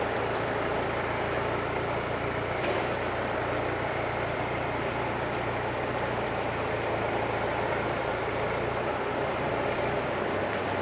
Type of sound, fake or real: fake